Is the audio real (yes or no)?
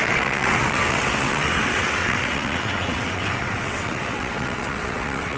no